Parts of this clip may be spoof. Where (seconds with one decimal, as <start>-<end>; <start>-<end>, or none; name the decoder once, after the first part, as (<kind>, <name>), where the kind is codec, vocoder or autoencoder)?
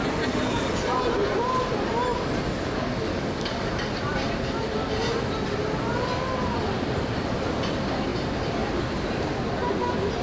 3.1-3.7 (codec, DAC)